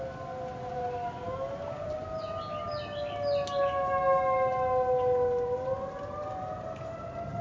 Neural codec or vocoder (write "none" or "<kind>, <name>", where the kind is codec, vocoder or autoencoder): none